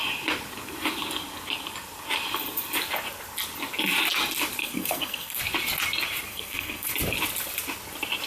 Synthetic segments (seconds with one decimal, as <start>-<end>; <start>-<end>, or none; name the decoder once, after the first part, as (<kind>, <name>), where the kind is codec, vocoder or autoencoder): 4.6-5.4 (codec, SNAC); 6.3-6.9